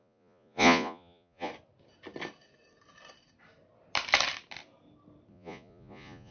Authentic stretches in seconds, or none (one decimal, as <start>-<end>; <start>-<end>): 1.5-5.3